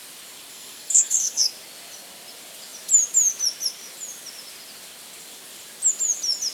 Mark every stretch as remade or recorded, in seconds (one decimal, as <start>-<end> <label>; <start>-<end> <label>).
0.0-0.5 recorded; 0.5-1.5 remade; 1.5-6.5 recorded